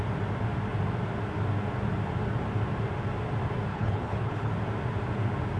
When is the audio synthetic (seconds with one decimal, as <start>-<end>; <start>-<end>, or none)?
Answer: 3.7-4.5